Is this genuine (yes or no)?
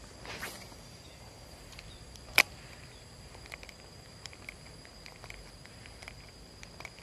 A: no